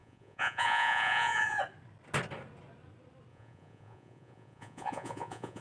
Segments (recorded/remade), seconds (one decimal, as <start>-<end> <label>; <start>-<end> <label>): 0.0-1.6 remade; 1.6-3.3 recorded; 3.3-5.6 remade